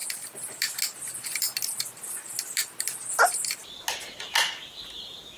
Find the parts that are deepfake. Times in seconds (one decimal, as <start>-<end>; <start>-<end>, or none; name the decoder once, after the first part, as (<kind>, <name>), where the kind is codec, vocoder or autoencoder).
none